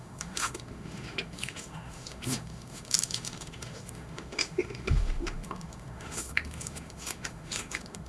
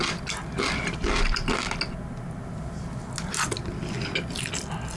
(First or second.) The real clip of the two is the second